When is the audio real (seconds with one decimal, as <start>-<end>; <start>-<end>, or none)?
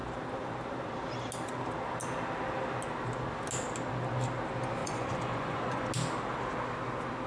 0.0-4.8; 5.9-7.3